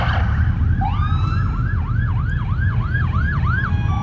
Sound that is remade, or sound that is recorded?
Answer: recorded